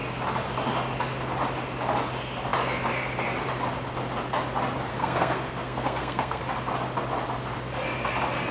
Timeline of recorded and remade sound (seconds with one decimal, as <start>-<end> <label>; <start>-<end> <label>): 0.0-4.9 recorded; 4.9-6.4 remade; 6.4-8.5 recorded